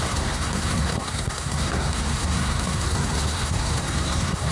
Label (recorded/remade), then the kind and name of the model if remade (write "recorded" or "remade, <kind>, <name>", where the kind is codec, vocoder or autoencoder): remade, codec, SNAC